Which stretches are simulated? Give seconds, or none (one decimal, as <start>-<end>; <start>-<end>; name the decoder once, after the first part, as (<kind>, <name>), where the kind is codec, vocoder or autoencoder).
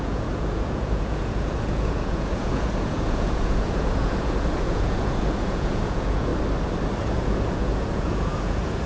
0.0-6.3 (vocoder, Vocos); 7.0-8.9